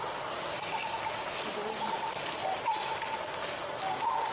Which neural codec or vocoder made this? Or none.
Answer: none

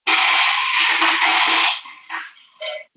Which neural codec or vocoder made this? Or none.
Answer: none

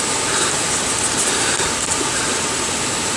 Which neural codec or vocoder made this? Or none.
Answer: none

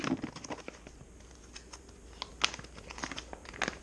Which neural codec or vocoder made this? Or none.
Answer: none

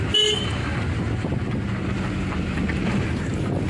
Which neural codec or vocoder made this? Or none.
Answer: none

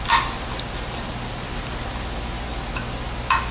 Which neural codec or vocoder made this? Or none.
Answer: none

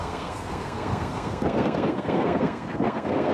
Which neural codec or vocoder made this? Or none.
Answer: codec, SNAC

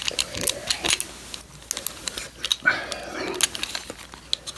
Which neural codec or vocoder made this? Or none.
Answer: none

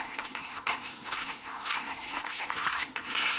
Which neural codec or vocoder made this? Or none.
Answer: codec, SNAC